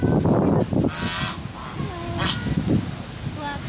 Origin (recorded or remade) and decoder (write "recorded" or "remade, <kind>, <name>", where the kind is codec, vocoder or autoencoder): recorded